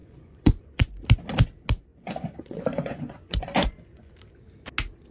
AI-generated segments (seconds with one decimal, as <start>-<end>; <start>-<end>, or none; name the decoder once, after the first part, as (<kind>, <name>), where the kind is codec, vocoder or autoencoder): 0.0-0.9 (vocoder, Vocos); 1.9-4.1